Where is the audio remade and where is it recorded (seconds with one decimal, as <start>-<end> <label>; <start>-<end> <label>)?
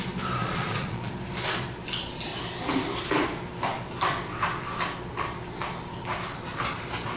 0.0-0.4 recorded; 0.4-1.1 remade; 1.1-7.2 recorded